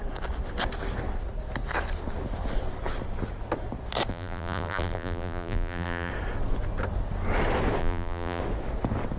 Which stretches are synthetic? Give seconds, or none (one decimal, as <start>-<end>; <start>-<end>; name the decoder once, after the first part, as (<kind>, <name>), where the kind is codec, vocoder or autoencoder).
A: 4.1-6.1 (vocoder, BigVGAN v2); 7.8-8.4